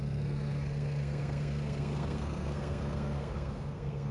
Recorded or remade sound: remade